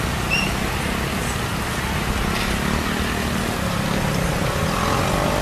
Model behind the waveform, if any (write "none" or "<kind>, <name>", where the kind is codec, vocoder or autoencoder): none